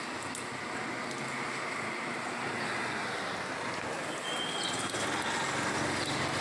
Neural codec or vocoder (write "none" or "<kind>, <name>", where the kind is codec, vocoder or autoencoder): none